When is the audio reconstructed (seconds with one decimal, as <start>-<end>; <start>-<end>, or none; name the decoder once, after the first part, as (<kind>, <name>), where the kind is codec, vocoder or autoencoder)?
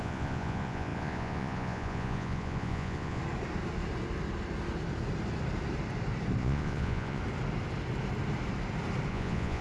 0.0-3.2 (vocoder, Vocos); 6.4-7.2; 9.1-9.6